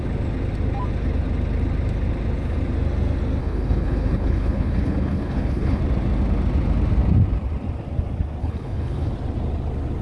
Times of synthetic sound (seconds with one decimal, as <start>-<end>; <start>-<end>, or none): 3.4-5.8; 8.4-9.1